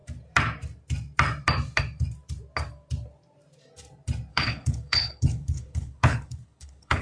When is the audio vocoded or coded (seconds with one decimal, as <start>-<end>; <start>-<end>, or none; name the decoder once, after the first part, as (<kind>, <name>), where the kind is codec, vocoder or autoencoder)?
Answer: 4.3-7.0 (codec, HILCodec)